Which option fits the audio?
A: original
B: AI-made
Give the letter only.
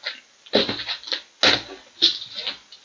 A